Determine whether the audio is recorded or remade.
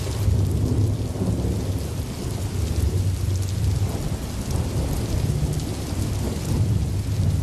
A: recorded